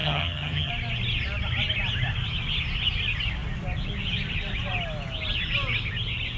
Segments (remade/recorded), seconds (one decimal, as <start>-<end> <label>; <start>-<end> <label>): 0.0-0.7 remade; 0.7-6.4 recorded